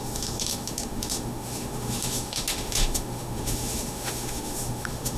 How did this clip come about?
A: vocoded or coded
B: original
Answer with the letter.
A